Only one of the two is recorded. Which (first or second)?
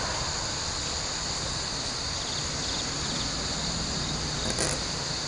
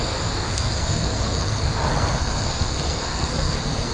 first